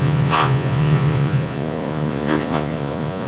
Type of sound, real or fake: fake